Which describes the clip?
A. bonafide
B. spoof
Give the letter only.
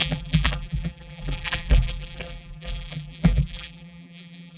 B